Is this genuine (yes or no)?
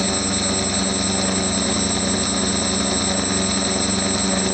yes